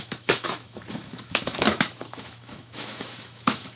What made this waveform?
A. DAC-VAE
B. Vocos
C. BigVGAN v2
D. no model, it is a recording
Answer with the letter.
A